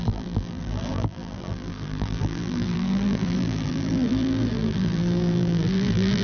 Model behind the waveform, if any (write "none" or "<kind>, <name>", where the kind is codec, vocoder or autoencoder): vocoder, BigVGAN v2